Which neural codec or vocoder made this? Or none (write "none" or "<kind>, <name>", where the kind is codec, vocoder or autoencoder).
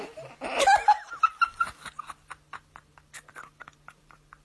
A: none